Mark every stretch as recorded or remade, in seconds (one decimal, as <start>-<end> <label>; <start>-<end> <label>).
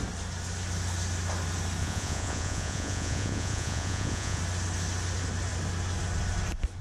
0.0-1.8 recorded; 1.8-4.4 remade; 4.4-6.8 recorded